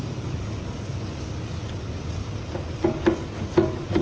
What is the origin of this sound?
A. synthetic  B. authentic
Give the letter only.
B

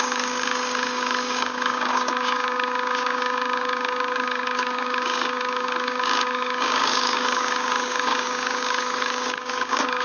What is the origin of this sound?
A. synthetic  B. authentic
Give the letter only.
A